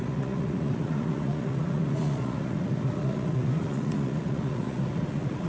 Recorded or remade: remade